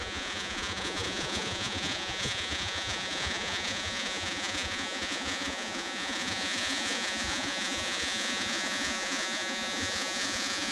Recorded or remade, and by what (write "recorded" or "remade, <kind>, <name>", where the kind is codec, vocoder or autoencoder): remade, vocoder, Vocos